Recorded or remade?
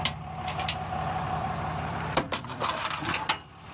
remade